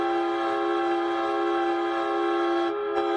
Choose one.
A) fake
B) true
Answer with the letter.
B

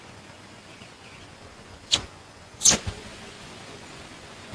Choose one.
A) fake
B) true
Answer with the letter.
A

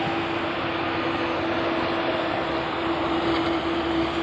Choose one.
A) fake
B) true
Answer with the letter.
B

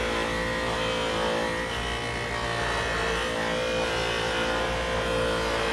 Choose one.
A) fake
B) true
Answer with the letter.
B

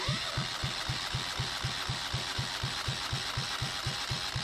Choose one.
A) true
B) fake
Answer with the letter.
A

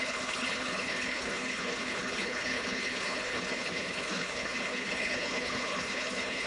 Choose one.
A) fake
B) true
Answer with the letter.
A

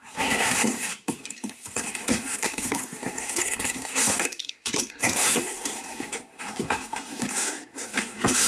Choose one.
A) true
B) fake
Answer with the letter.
B